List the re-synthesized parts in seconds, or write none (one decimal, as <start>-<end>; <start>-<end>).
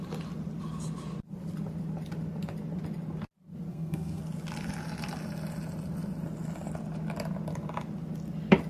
3.7-4.2